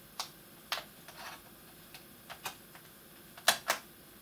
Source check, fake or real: real